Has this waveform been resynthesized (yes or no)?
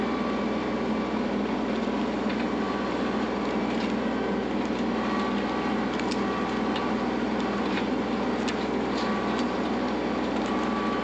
no